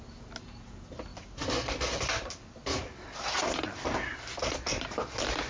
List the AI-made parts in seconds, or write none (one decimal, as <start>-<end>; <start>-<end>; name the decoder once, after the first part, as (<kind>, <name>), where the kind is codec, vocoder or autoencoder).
none